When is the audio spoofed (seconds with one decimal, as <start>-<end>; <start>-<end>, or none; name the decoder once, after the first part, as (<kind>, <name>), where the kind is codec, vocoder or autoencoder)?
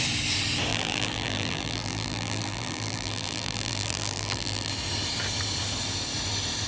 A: 0.7-4.7 (vocoder, BigVGAN v2)